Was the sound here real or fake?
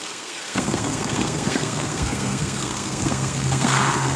fake